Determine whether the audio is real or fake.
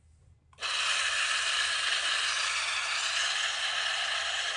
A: real